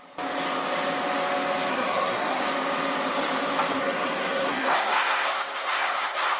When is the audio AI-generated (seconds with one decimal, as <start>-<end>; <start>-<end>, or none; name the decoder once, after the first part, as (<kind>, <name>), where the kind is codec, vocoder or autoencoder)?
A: 1.7-2.4 (codec, SNAC); 3.8-6.4